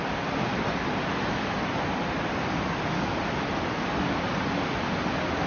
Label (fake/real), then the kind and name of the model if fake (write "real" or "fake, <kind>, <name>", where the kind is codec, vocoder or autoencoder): real